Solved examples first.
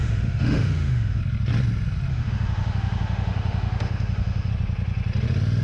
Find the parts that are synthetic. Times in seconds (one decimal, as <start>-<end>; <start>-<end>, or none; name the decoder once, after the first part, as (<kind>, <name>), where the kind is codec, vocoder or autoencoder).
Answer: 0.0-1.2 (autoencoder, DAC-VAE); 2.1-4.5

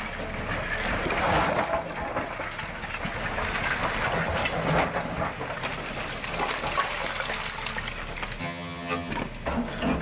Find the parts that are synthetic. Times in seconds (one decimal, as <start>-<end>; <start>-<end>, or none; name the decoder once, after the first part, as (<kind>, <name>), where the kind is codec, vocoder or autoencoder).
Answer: 8.4-9.1 (vocoder, HiFi-GAN)

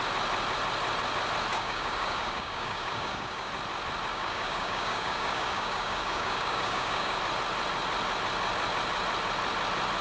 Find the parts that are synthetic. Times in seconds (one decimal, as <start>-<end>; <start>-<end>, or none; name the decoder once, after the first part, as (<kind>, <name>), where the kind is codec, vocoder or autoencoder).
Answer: 1.5-3.5 (codec, DAC); 4.1-7.2

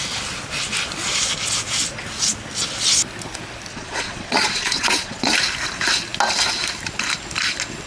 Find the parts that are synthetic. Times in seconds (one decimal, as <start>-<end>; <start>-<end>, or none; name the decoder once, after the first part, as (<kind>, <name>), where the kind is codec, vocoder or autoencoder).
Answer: 3.7-5.3 (vocoder, Vocos)

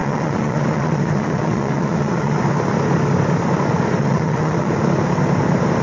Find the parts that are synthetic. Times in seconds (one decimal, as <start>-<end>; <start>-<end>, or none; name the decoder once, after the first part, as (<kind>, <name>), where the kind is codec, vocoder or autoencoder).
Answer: 0.0-2.4 (vocoder, WaveNeXt); 4.0-4.7

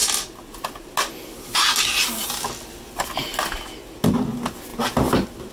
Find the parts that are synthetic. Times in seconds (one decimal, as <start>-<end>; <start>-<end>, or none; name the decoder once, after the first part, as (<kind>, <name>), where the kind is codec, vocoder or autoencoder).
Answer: none